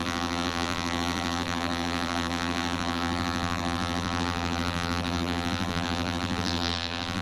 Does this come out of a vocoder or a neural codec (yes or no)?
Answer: yes